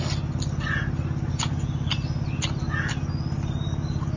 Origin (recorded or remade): recorded